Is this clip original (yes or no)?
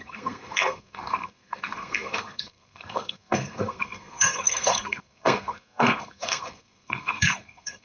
no